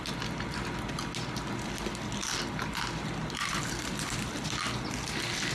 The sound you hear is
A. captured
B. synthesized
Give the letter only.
A